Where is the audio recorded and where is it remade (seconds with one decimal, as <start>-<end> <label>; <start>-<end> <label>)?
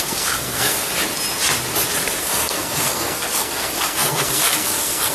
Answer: 0.0-0.9 remade; 0.9-2.2 recorded; 2.2-5.1 remade